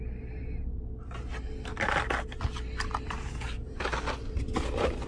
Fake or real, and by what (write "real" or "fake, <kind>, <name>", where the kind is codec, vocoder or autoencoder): real